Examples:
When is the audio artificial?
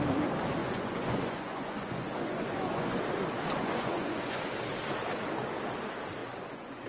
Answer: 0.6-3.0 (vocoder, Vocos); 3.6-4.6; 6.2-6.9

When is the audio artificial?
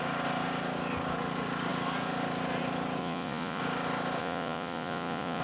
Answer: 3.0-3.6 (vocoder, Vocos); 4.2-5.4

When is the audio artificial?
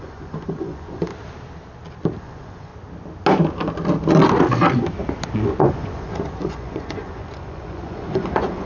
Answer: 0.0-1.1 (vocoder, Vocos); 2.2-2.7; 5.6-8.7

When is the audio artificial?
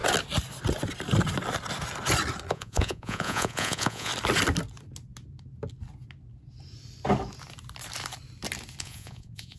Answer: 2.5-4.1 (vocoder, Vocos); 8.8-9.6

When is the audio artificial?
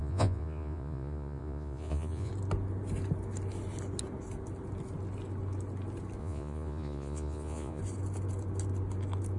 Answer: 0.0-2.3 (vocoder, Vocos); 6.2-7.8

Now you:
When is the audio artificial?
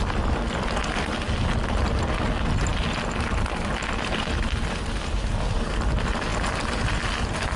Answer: none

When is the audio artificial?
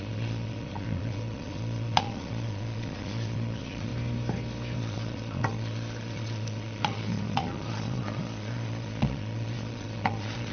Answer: 0.0-3.9 (vocoder, Vocos); 4.8-10.5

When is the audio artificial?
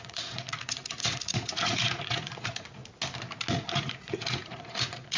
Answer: 0.0-2.8 (vocoder, Vocos); 3.5-5.2